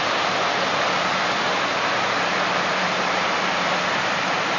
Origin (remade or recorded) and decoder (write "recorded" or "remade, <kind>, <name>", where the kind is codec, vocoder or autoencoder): recorded